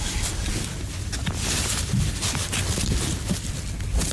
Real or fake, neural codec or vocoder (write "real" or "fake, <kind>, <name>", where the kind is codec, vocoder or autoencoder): real